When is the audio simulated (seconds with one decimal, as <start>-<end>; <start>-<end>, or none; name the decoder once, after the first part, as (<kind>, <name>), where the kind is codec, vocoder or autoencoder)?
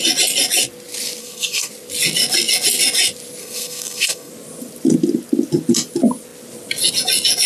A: 1.2-1.7 (codec, SNAC); 3.4-4.3